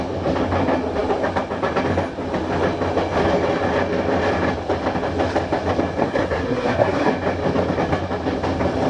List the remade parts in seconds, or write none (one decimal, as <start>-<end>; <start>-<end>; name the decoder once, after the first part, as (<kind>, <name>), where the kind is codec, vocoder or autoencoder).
6.0-7.1 (codec, SNAC)